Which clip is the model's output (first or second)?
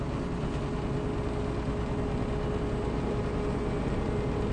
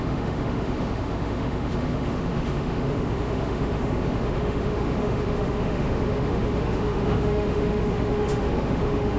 second